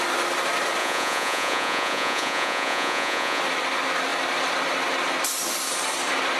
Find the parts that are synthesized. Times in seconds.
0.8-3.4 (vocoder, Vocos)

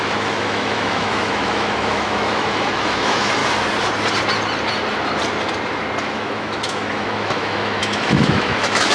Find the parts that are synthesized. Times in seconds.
0.0-3.4 (autoencoder, DAC-VAE); 6.0-8.9

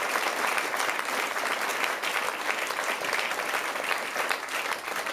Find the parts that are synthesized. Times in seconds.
1.7-5.1 (vocoder, BigVGAN v2)